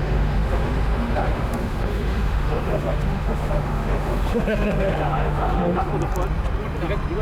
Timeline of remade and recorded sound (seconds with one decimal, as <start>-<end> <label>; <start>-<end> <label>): 0.0-5.9 remade; 5.9-7.2 recorded